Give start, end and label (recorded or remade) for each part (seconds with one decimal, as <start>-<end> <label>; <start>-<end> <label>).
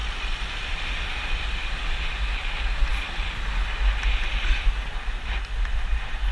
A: 0.0-1.7 remade; 1.7-2.9 recorded; 2.9-3.7 remade; 3.7-6.3 recorded